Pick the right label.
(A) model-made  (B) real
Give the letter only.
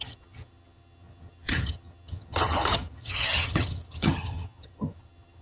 A